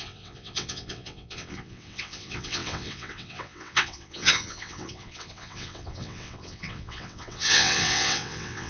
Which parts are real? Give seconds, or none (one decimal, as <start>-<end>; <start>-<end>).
none